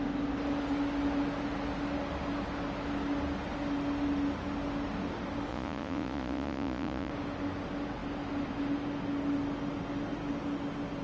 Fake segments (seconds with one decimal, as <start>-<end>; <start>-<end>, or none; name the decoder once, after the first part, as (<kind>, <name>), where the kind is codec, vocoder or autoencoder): 5.5-7.1 (vocoder, Vocos)